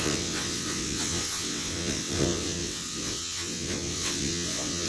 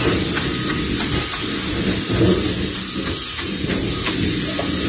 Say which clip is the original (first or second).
second